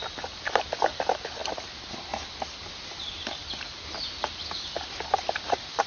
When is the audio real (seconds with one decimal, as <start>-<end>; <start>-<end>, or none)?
0.0-5.9

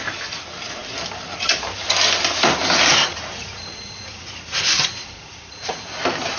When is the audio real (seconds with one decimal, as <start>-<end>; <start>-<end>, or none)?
0.0-3.1; 4.6-5.0; 5.9-6.4